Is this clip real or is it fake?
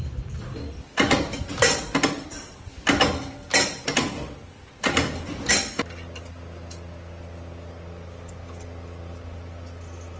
real